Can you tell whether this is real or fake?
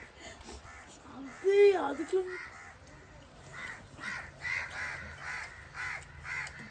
real